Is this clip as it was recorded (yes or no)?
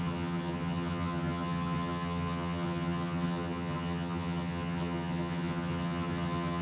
no